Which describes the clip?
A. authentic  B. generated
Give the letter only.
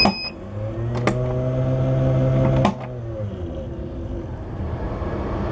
A